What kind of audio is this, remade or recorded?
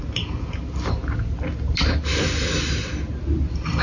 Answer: recorded